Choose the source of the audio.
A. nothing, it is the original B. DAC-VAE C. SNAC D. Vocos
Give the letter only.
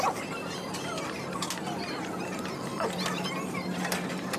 A